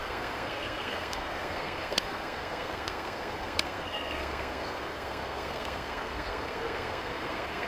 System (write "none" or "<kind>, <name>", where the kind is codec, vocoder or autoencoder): codec, SNAC